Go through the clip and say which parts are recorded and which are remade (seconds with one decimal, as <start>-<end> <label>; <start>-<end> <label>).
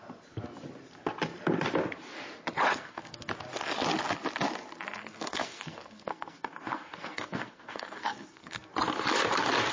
0.0-2.7 recorded; 2.7-3.3 remade; 3.3-5.0 recorded; 5.0-8.7 remade; 8.7-9.7 recorded